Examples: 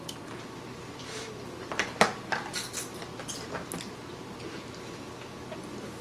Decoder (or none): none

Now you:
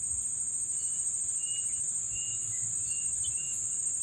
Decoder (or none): none